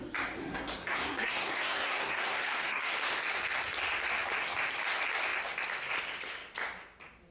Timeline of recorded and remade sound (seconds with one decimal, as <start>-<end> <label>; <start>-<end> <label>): 0.0-0.4 recorded; 0.4-2.9 remade; 2.9-7.3 recorded